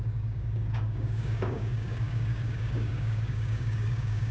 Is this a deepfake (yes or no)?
yes